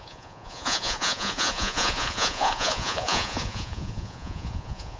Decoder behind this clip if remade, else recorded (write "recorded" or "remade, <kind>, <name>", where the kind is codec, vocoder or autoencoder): remade, vocoder, Vocos